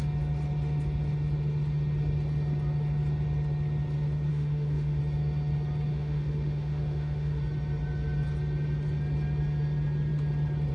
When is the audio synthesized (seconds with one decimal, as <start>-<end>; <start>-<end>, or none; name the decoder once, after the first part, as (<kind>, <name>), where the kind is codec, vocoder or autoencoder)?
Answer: 4.3-5.0 (autoencoder, DAC-VAE); 5.9-7.4